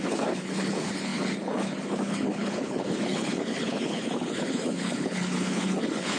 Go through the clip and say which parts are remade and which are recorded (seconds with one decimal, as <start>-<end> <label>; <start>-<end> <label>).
0.0-6.2 remade